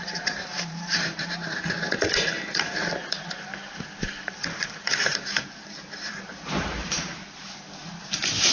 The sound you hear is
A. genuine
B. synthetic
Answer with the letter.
B